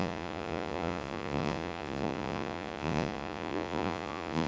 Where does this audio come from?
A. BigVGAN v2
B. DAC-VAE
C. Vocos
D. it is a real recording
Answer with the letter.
C